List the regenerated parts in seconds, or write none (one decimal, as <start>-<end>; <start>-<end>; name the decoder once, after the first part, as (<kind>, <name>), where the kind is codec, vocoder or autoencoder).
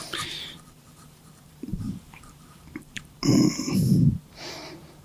0.0-5.0 (vocoder, BigVGAN v2)